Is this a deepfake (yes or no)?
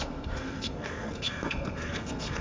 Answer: yes